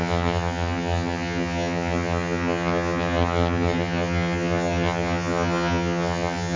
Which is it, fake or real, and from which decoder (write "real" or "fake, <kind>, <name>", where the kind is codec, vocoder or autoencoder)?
fake, vocoder, HiFi-GAN